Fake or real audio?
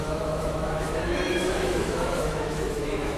fake